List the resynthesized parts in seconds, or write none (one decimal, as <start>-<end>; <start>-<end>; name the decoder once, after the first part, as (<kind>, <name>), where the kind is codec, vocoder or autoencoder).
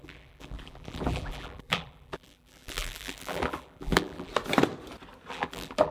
0.0-4.3 (vocoder, BigVGAN v2); 5.3-5.9